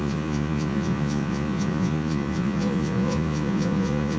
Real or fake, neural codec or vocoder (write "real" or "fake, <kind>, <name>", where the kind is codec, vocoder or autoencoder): fake, vocoder, Vocos